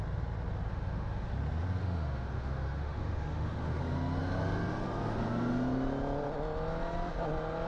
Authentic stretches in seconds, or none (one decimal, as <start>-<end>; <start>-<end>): 0.0-0.7; 1.3-1.8; 3.8-7.7

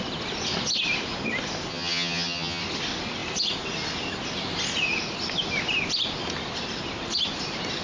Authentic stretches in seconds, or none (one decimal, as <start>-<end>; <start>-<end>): 0.0-1.7; 2.6-7.8

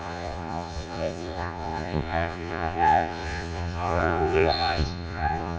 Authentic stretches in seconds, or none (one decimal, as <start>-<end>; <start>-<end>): none